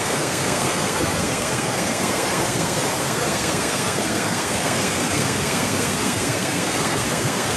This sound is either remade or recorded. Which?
remade